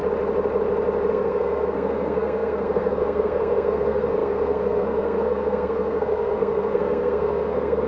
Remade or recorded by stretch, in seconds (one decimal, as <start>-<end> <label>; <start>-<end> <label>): 0.0-1.1 recorded; 1.1-7.9 remade